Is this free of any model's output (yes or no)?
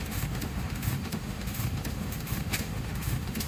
no